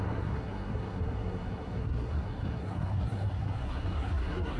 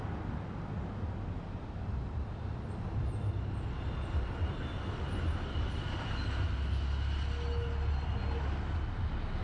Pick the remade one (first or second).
first